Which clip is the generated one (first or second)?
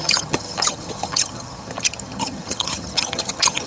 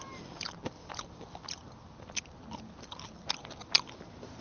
first